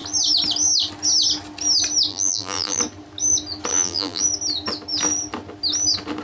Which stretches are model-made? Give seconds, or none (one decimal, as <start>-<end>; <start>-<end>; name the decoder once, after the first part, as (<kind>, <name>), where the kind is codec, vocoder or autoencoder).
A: 2.1-2.8 (vocoder, BigVGAN v2); 3.7-4.2